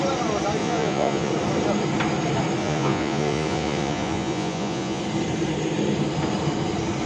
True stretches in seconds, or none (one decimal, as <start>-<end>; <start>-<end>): 0.0-0.6; 1.3-2.6; 5.0-7.1